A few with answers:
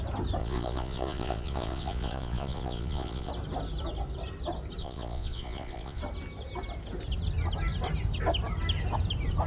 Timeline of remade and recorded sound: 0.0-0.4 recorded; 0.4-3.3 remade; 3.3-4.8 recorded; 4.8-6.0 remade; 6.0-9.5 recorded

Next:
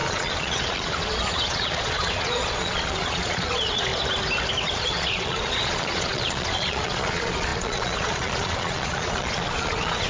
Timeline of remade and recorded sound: 0.0-3.9 remade; 3.9-4.7 recorded; 4.7-10.1 remade

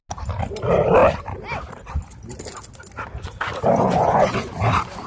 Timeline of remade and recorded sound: 0.0-3.7 recorded; 3.7-4.5 remade; 4.5-5.1 recorded